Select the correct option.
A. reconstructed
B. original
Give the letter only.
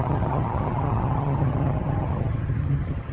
A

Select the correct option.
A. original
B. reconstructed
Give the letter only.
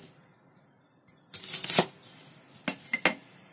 A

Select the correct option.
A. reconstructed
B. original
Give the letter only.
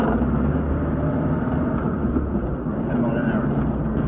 A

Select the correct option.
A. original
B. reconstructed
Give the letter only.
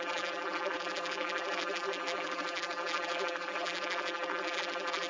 B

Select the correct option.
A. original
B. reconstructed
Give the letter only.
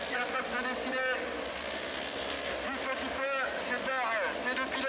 A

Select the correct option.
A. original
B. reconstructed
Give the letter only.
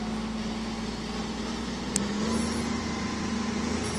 A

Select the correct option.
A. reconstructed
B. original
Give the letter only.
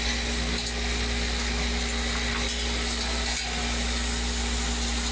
B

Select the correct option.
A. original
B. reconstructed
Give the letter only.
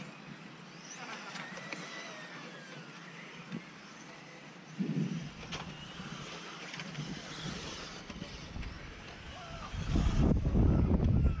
B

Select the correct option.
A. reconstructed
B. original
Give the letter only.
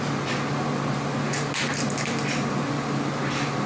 B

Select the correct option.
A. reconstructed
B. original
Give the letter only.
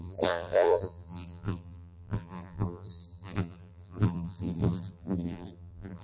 A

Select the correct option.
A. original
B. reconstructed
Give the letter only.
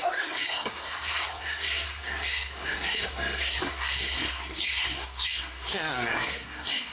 B